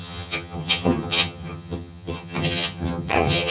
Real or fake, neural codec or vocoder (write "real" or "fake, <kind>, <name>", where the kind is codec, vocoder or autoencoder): fake, vocoder, HiFi-GAN